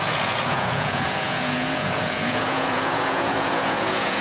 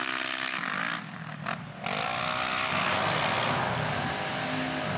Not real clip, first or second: first